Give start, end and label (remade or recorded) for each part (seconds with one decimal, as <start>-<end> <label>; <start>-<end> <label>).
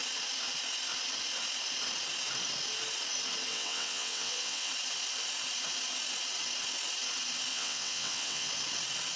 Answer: 0.0-3.5 recorded; 3.5-4.7 remade; 4.7-7.5 recorded; 7.5-8.5 remade; 8.5-9.2 recorded